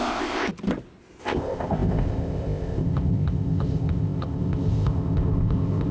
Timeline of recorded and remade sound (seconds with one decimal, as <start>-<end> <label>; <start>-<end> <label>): 0.0-0.5 remade; 0.5-1.2 recorded; 1.2-5.9 remade